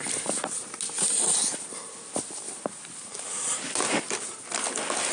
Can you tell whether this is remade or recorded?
recorded